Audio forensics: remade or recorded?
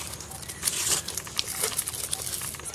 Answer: remade